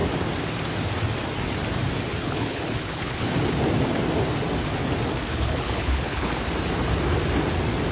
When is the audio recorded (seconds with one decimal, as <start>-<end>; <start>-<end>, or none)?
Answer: 0.0-2.2; 3.3-5.3; 6.3-7.9